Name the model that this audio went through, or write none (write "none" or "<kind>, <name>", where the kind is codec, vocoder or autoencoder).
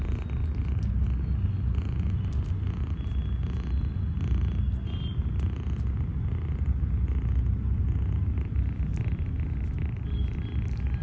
none